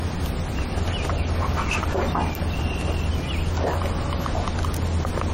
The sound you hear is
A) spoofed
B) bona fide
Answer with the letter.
B